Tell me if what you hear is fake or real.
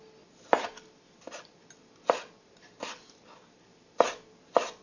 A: real